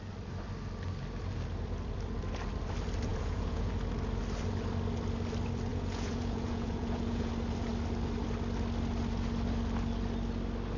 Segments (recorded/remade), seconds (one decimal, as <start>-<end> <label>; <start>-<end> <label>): 0.0-3.1 recorded; 3.1-3.7 remade; 3.7-5.7 recorded; 5.7-7.3 remade; 7.3-10.8 recorded